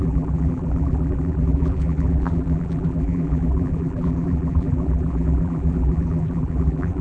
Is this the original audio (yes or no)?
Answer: no